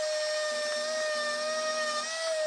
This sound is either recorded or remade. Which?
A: recorded